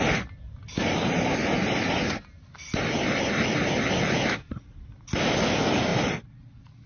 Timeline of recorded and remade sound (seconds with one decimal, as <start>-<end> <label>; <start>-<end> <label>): 0.0-6.9 recorded